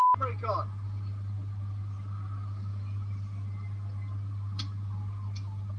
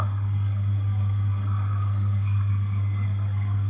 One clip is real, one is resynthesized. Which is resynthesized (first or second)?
second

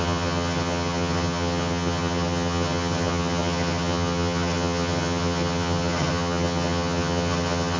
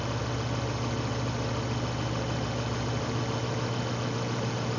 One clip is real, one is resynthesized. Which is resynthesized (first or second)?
first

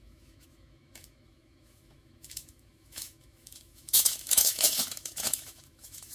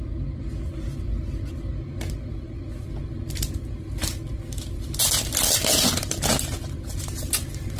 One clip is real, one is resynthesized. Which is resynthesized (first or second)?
first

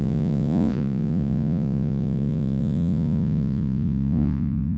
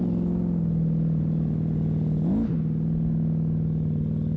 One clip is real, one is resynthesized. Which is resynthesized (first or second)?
first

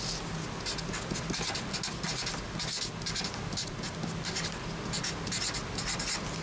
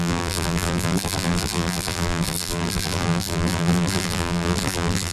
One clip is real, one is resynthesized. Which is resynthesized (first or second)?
second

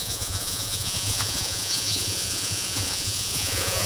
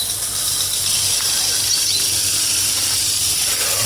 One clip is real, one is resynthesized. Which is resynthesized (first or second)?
first